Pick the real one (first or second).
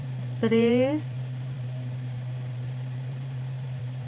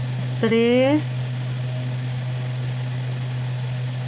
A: second